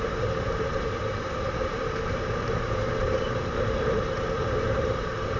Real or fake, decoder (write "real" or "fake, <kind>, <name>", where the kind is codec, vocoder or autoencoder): fake, vocoder, BigVGAN v2